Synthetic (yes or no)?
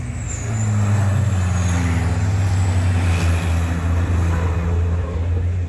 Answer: no